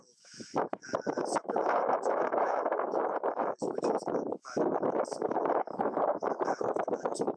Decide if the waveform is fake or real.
fake